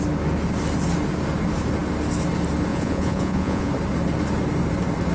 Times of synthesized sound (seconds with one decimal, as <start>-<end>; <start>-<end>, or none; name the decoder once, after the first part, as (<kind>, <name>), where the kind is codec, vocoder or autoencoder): 2.7-3.7 (vocoder, Vocos)